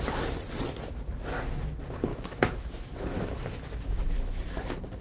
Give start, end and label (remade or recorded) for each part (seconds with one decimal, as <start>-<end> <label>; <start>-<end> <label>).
0.0-2.1 recorded; 2.1-4.4 remade; 4.4-5.0 recorded